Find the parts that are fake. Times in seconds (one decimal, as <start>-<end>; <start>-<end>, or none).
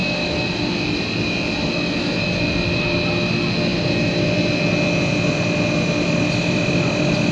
none